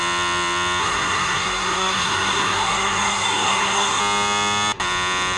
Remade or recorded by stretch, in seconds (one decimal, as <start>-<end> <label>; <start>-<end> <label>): 0.0-0.8 recorded; 0.8-4.0 remade; 4.0-5.4 recorded